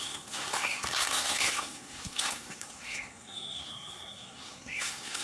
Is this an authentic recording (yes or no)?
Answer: no